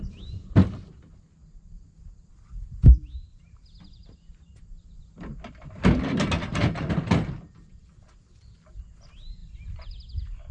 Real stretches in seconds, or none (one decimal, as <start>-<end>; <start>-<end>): 0.4-2.3; 4.0-6.9